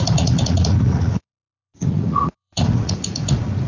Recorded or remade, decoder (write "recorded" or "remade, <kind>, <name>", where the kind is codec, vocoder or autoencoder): remade, vocoder, Vocos